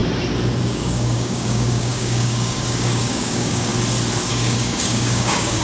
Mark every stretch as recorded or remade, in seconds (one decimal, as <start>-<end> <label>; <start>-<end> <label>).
0.0-0.6 recorded; 0.6-3.7 remade; 3.7-4.3 recorded; 4.3-5.6 remade